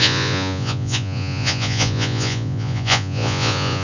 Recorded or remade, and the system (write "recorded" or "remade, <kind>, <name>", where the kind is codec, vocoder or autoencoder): remade, vocoder, Vocos